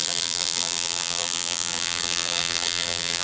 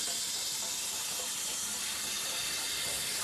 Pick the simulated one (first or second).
first